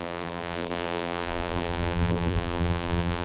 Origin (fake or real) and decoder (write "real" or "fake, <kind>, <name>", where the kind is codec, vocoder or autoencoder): fake, vocoder, BigVGAN v2